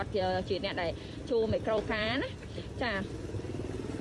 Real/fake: fake